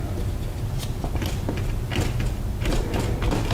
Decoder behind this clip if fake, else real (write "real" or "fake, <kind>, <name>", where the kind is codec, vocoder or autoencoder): real